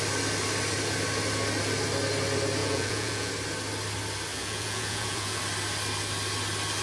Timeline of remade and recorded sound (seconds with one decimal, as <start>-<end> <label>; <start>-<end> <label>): 0.0-2.6 recorded; 2.6-3.3 remade; 3.3-4.3 recorded; 4.3-5.4 remade; 5.4-6.8 recorded